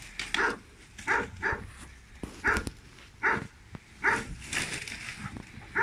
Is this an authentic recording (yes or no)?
yes